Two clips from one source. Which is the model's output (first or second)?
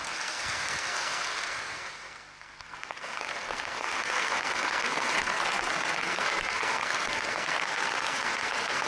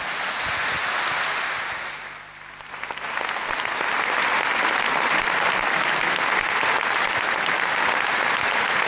first